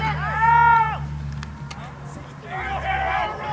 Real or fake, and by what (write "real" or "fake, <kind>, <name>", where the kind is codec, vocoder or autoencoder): real